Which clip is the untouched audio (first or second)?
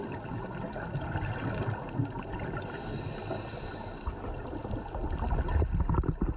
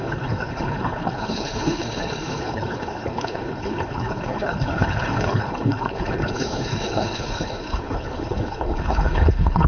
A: first